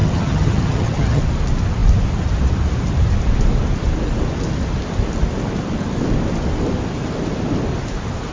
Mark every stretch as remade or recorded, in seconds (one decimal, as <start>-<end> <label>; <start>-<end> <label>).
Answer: 0.0-1.2 remade; 1.2-8.3 recorded